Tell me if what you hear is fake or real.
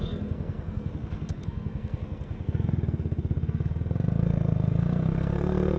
fake